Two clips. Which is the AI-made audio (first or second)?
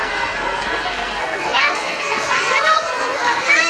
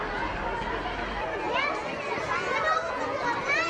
first